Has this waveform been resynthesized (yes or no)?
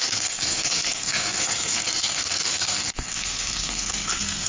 yes